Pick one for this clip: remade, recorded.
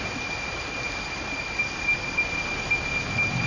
recorded